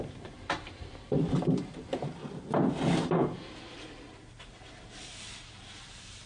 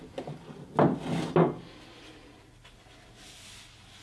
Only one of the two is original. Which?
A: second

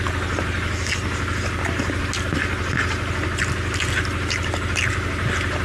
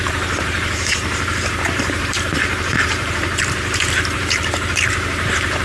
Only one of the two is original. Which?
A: first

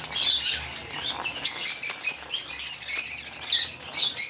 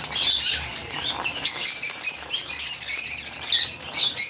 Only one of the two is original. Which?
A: first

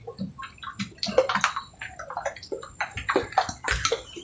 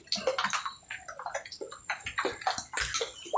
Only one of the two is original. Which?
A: second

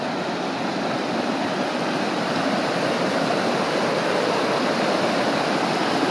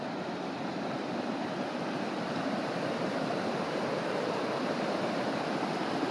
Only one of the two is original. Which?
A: first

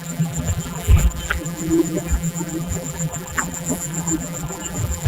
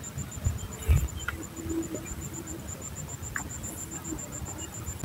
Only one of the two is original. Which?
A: second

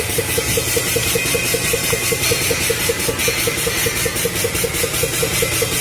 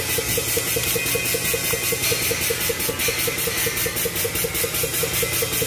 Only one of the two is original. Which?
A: second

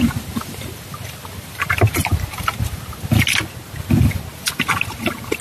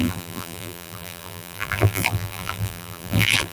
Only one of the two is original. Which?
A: first